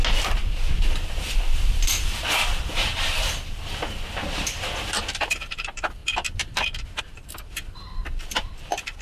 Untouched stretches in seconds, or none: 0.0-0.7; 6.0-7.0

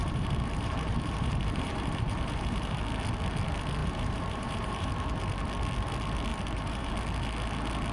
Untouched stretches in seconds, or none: 2.8-3.8; 4.9-6.3; 6.9-7.9